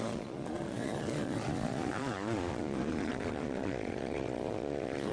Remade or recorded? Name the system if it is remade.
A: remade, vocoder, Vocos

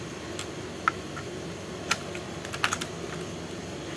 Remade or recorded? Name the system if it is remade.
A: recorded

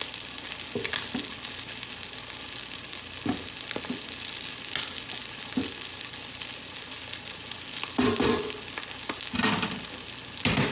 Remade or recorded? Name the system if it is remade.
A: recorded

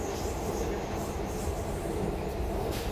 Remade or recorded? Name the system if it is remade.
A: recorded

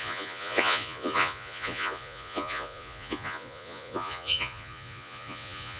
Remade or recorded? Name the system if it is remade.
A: remade, vocoder, Vocos